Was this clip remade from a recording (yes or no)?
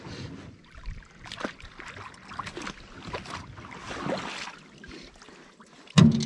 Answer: no